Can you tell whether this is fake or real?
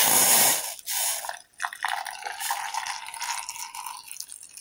real